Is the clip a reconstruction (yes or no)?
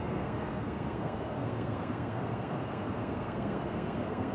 yes